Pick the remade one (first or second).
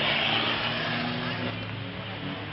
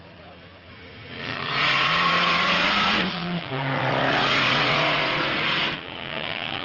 second